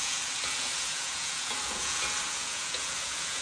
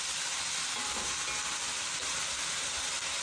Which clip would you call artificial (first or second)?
first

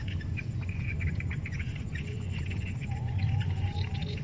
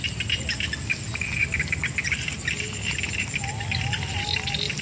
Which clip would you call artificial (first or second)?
first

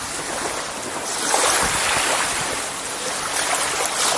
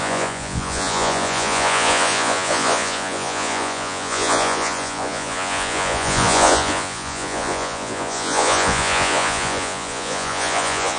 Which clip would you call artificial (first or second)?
second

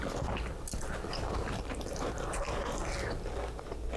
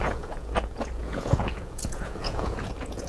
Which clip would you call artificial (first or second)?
second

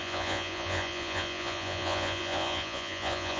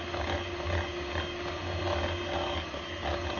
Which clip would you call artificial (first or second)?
first